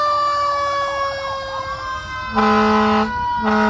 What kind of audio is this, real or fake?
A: real